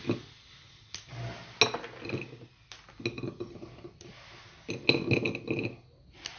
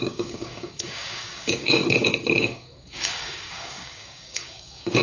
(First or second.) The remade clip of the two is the second